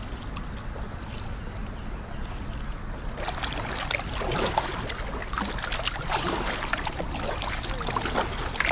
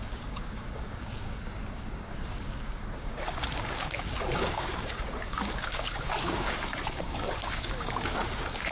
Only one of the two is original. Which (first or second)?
first